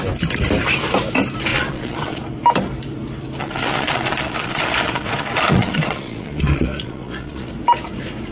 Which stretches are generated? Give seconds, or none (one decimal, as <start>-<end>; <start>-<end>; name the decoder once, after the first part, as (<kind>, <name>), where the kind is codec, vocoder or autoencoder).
1.5-2.2 (vocoder, Vocos); 3.4-7.5